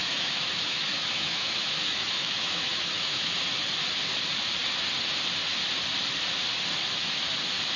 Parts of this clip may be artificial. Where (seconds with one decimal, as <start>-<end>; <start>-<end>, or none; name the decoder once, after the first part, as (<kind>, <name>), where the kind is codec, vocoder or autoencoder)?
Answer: 0.0-3.3 (autoencoder, DAC-VAE)